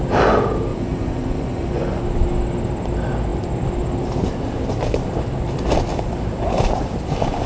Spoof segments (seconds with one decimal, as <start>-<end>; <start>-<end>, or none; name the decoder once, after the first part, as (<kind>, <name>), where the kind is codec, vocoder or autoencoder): 0.7-2.0 (vocoder, Vocos)